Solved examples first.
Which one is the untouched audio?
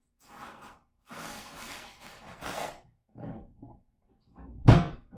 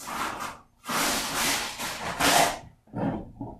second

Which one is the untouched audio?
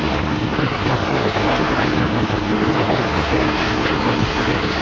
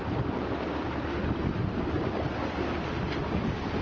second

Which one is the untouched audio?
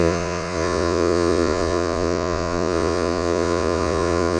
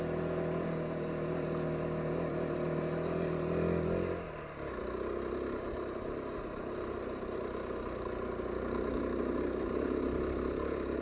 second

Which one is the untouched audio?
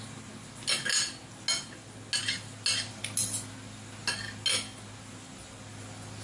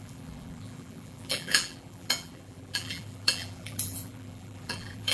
first